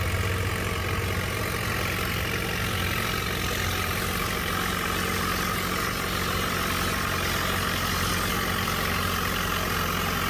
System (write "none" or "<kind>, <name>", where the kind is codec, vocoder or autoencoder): none